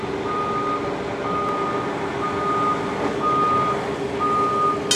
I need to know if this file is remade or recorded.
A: recorded